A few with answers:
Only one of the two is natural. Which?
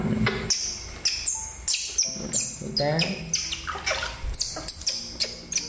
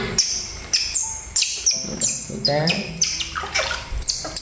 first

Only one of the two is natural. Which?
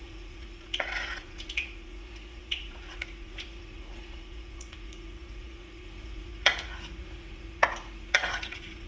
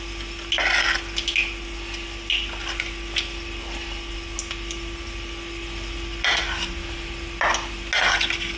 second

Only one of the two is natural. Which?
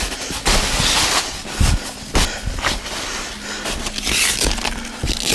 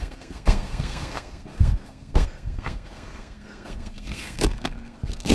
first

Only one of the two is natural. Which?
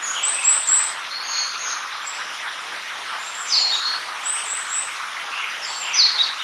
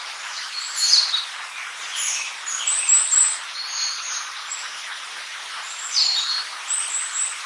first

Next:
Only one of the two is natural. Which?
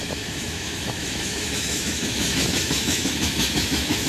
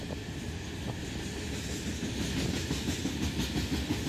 second